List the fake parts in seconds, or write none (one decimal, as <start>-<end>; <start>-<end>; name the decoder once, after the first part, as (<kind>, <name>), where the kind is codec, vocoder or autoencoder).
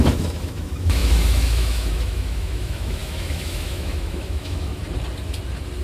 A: 0.0-4.8 (autoencoder, DAC-VAE)